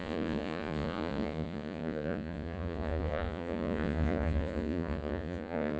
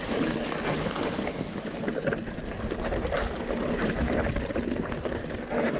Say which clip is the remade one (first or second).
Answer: first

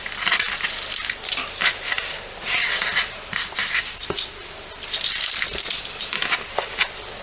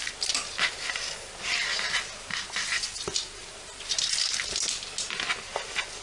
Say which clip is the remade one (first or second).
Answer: first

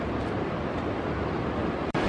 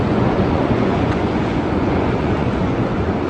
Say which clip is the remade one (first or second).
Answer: second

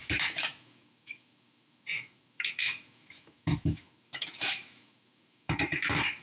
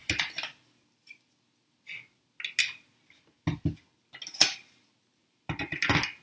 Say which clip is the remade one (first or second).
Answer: first